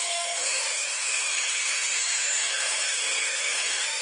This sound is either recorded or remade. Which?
remade